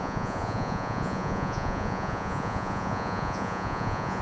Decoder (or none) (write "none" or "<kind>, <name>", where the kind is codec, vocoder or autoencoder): vocoder, Vocos